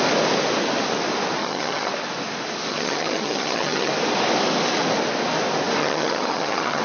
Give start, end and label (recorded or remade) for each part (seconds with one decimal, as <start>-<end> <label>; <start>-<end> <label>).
0.0-1.4 recorded; 1.4-1.9 remade; 1.9-2.7 recorded; 2.7-3.9 remade; 3.9-5.8 recorded; 5.8-6.8 remade